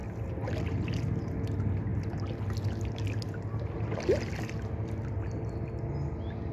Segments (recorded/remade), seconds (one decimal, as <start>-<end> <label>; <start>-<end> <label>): 0.0-6.5 recorded